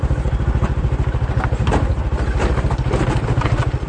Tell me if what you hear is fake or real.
real